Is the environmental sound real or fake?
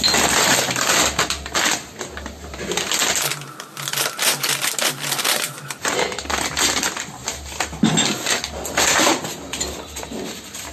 real